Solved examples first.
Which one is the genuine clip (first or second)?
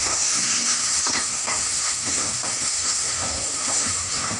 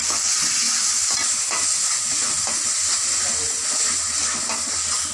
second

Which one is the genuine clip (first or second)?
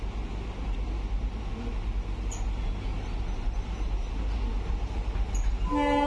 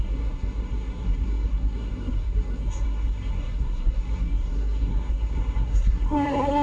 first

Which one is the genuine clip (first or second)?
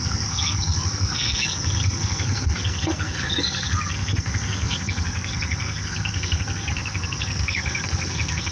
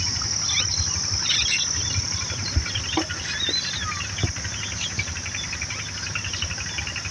second